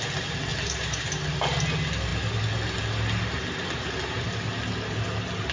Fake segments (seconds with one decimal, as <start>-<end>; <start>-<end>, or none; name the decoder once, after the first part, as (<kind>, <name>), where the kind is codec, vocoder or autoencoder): 0.5-1.1 (vocoder, BigVGAN v2)